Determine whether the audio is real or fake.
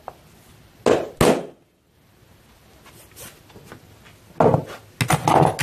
real